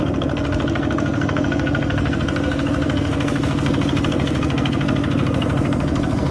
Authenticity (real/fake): fake